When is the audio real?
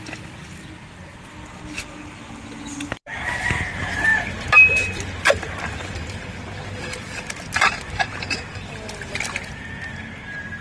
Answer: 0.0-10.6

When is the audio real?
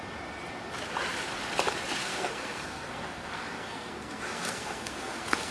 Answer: 0.0-2.0